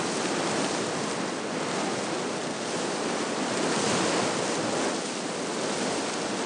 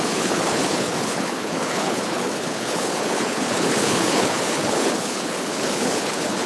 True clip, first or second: first